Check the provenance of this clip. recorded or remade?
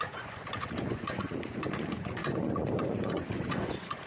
remade